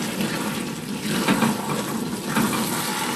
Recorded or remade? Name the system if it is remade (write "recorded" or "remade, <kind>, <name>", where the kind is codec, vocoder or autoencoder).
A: recorded